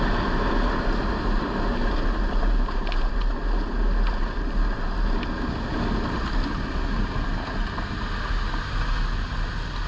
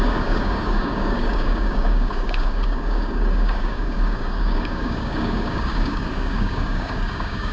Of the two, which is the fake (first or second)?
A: second